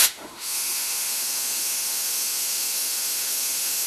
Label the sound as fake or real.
fake